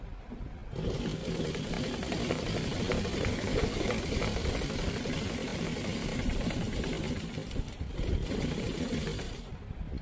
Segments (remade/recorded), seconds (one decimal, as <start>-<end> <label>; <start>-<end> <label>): 0.0-3.3 recorded; 3.3-3.9 remade; 3.9-10.0 recorded